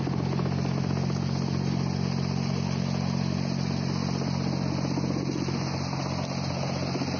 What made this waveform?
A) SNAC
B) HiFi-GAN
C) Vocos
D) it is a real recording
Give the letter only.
D